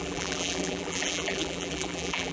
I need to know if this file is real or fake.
fake